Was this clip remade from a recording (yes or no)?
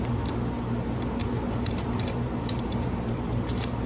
yes